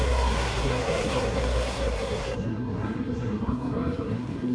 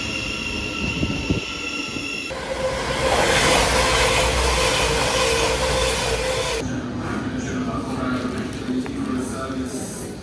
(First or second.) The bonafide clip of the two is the second